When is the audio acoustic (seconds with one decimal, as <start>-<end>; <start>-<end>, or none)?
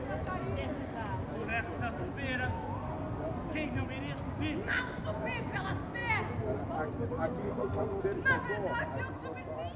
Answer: 0.0-7.4; 8.0-9.8